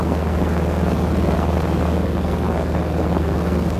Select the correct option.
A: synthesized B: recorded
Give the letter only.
A